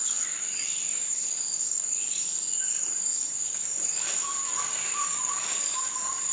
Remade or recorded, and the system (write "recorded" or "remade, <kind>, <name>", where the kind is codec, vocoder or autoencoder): remade, codec, DAC